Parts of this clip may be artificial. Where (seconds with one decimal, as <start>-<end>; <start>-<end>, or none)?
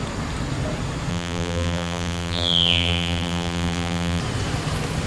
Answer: 1.1-4.2